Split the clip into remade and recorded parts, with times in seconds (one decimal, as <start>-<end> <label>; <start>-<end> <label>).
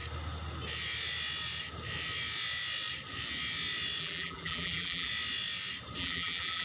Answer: 0.0-4.0 recorded; 4.0-5.1 remade; 5.1-6.0 recorded; 6.0-6.6 remade